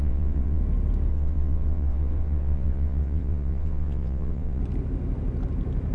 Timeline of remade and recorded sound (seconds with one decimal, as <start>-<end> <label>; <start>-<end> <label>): 0.0-0.6 remade; 0.6-1.1 recorded; 1.1-4.6 remade; 4.6-5.9 recorded